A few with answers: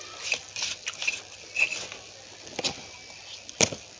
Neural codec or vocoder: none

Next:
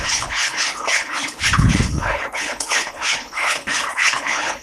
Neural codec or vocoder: codec, HILCodec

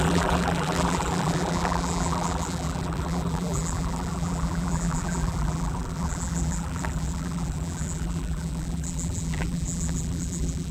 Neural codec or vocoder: vocoder, BigVGAN v2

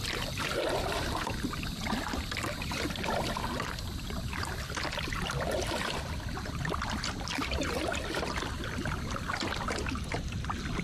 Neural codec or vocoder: none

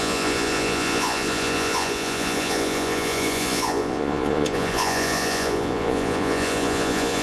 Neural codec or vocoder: vocoder, Vocos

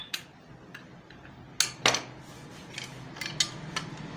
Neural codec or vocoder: none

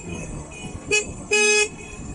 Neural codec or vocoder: codec, SNAC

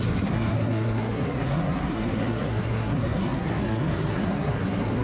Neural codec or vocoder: codec, SNAC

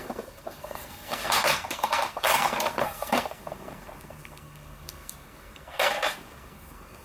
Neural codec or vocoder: codec, SNAC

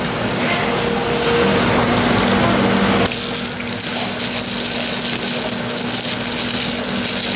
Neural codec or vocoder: none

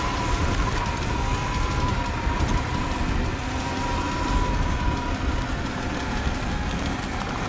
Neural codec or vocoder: none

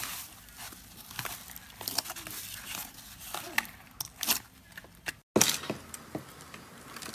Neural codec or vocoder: none